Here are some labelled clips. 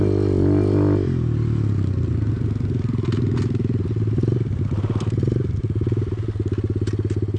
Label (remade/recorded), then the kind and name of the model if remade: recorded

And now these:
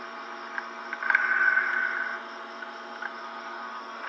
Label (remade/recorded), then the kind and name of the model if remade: recorded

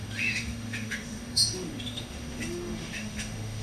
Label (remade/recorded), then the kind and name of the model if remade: remade, autoencoder, DAC-VAE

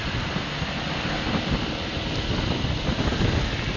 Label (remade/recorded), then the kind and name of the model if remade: recorded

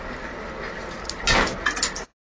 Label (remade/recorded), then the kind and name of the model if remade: recorded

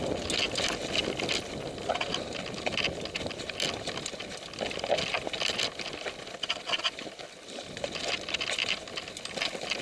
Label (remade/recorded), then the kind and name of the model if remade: recorded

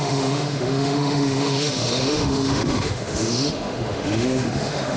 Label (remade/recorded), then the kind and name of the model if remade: remade, autoencoder, DAC-VAE